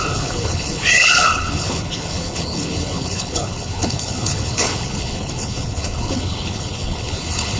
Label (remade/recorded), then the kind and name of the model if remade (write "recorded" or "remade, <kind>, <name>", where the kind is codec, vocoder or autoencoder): remade, codec, HILCodec